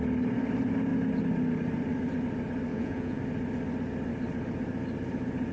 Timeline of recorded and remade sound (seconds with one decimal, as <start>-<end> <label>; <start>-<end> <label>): 0.0-2.7 recorded; 2.7-3.2 remade; 3.2-5.5 recorded